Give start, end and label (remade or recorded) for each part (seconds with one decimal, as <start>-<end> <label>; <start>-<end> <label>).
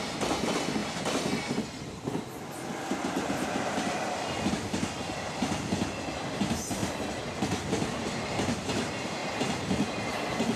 0.0-0.8 remade; 0.8-4.5 recorded; 4.5-6.8 remade; 6.8-8.0 recorded; 8.0-9.2 remade; 9.2-10.6 recorded